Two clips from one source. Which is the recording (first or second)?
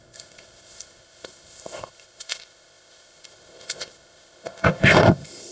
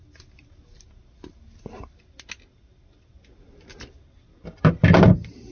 second